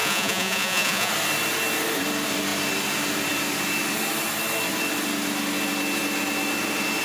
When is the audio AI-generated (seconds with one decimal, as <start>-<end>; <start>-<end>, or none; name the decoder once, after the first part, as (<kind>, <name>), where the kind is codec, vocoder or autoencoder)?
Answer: 0.0-1.1 (vocoder, Vocos)

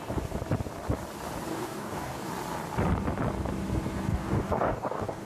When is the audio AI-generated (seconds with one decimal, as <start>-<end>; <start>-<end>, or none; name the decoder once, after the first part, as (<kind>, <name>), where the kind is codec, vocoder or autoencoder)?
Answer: 1.5-2.3 (codec, DAC); 4.1-5.3